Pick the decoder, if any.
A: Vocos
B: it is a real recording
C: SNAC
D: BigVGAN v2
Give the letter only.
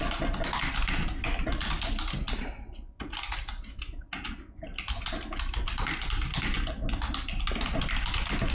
B